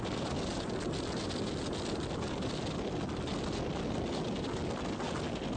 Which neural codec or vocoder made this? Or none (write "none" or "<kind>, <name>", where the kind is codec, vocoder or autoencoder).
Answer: none